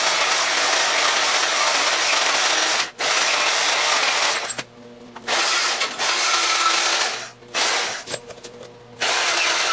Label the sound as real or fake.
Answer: real